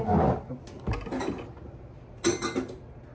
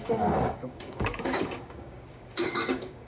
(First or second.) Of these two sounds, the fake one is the second